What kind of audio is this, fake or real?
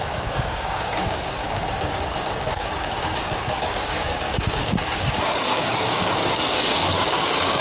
fake